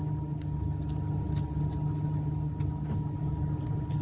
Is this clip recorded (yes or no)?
yes